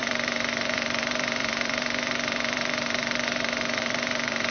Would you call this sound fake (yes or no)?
yes